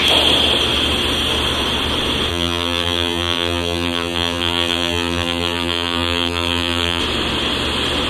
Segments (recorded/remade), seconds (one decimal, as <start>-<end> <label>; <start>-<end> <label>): 0.0-2.3 recorded; 2.3-7.0 remade; 7.0-8.1 recorded